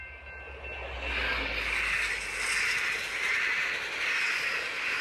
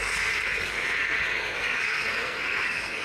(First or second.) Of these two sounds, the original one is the first